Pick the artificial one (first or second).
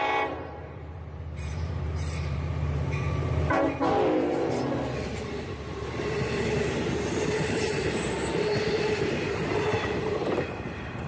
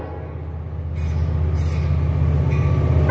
first